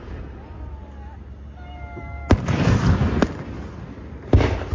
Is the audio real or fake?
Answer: real